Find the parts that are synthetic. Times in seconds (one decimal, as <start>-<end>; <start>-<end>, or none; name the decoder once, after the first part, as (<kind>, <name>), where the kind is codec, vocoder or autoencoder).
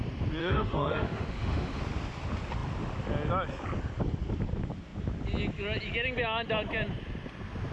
0.4-1.8 (autoencoder, DAC-VAE)